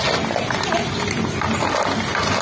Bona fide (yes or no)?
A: yes